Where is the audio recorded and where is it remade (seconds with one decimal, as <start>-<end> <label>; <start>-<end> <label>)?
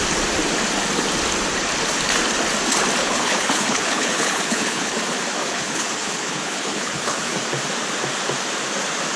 0.0-3.0 recorded; 3.0-5.0 remade; 5.0-5.4 recorded; 5.4-7.4 remade; 7.4-9.2 recorded